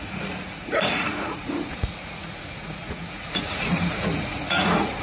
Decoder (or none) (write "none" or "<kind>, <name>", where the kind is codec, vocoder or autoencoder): vocoder, Vocos